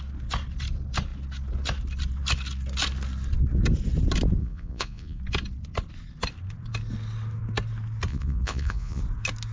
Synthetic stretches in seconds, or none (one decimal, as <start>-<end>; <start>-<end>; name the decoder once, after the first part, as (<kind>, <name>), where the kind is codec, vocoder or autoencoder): 4.4-5.2 (vocoder, Vocos); 8.1-9.0